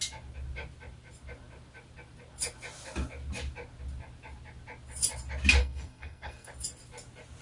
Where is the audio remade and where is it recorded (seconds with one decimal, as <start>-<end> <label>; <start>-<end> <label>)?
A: 0.0-5.6 recorded; 5.6-6.5 remade; 6.5-7.4 recorded